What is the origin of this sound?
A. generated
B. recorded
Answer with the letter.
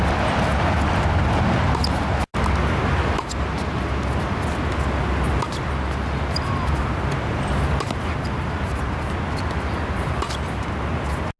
B